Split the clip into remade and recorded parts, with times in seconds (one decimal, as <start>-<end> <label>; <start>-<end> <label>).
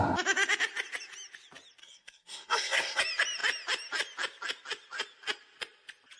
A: 0.0-1.8 recorded; 1.8-3.0 remade; 3.0-6.2 recorded